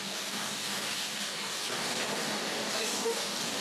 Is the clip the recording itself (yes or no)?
no